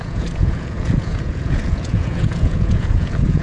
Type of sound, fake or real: fake